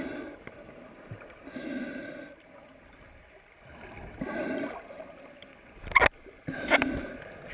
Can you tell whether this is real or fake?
real